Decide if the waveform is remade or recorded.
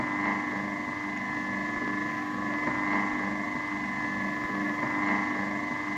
recorded